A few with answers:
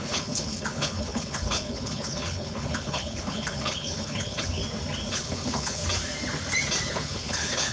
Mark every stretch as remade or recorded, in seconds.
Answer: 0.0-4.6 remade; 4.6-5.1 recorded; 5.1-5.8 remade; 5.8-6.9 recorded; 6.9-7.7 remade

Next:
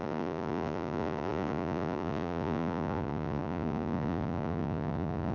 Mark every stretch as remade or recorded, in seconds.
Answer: 0.0-5.3 remade

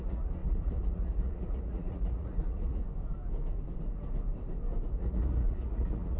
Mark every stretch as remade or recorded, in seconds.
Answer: 0.0-2.8 remade; 2.8-4.9 recorded; 4.9-6.2 remade